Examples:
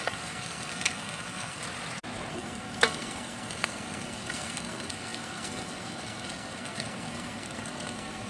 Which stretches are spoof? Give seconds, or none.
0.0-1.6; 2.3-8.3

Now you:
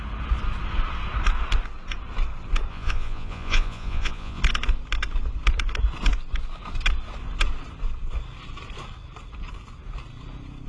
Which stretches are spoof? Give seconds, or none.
2.7-4.4

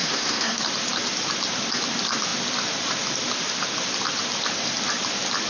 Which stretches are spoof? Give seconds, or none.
0.0-0.6

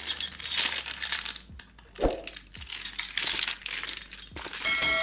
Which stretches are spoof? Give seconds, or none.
none